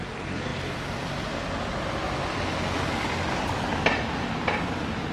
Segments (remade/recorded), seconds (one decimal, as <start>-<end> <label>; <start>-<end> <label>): 0.0-5.1 recorded